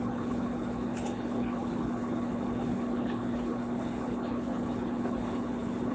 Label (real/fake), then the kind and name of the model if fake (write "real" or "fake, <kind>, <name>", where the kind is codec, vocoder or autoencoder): fake, codec, HILCodec